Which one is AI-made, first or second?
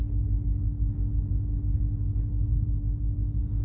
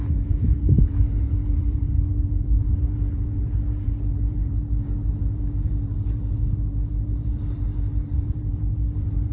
second